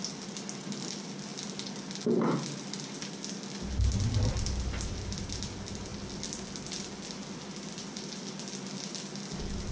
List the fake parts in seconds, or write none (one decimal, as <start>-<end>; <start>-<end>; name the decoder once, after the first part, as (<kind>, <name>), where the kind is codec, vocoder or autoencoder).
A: none